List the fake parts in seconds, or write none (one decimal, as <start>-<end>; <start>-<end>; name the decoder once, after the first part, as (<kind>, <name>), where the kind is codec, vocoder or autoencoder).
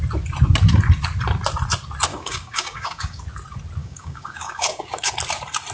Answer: 2.1-3.2 (codec, DAC); 3.8-5.1